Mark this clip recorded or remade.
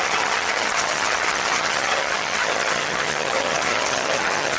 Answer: remade